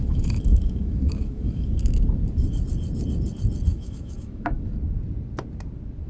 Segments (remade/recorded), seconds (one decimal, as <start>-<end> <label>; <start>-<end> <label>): 0.0-2.0 remade; 2.0-3.7 recorded; 3.7-4.6 remade; 4.6-6.1 recorded